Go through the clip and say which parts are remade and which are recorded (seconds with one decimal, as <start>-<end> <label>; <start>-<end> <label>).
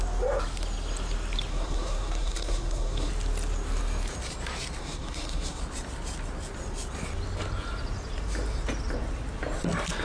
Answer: 0.0-1.5 recorded; 1.5-3.1 remade; 3.1-4.8 recorded; 4.8-5.6 remade; 5.6-10.0 recorded